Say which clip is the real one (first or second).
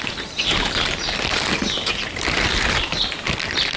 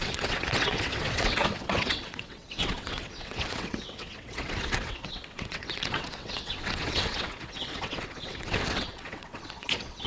first